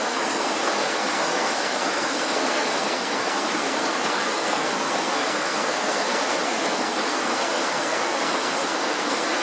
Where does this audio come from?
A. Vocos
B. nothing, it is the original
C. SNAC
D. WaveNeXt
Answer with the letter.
C